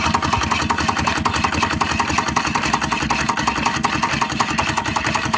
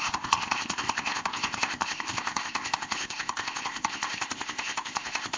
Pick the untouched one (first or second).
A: first